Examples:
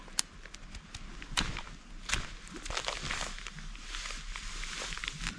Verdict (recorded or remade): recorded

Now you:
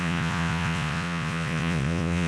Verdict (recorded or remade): remade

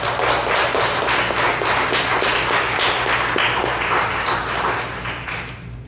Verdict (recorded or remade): recorded